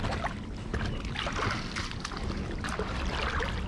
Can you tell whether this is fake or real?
real